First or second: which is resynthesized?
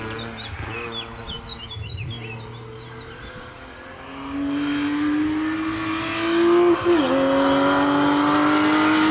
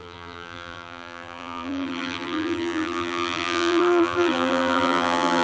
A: second